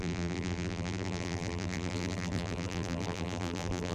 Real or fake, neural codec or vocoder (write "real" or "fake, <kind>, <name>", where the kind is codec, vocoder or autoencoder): fake, vocoder, BigVGAN v2